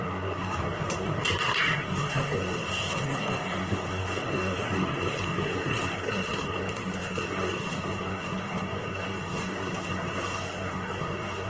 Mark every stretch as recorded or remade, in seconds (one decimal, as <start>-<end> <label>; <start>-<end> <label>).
0.0-11.5 remade